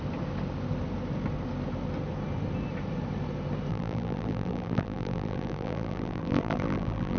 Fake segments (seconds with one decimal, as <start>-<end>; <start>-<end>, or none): 3.7-7.2